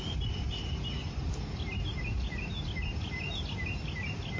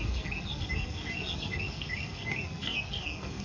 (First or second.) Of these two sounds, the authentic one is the first